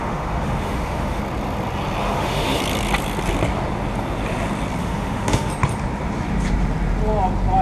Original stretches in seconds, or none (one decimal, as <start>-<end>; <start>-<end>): 1.2-2.0; 2.6-4.8; 5.5-7.6